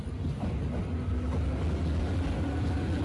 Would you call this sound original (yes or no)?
yes